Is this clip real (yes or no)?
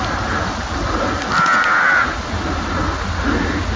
yes